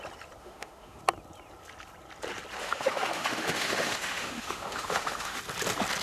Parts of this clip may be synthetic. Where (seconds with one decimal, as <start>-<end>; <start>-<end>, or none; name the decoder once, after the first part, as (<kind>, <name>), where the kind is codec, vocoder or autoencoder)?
0.4-1.0 (autoencoder, DAC-VAE); 2.6-5.4